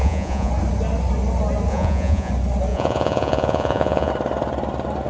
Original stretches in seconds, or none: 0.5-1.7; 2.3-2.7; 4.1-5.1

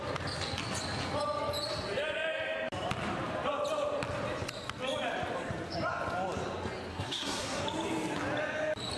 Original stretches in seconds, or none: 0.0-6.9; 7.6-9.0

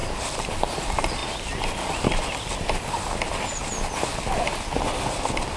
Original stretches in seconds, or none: 0.0-5.6

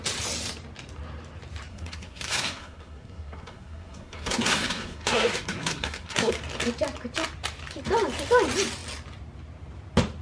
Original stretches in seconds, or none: 0.0-1.7; 6.4-10.2

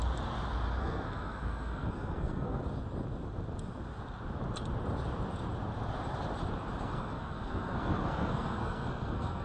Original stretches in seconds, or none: 0.0-0.8; 2.6-6.8

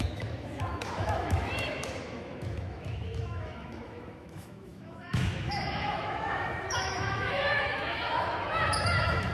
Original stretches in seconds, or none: none

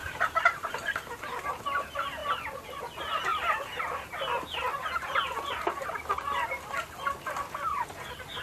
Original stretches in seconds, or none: 1.2-8.4

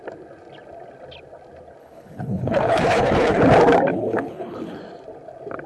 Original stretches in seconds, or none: 0.0-1.8; 3.4-3.9; 4.8-5.7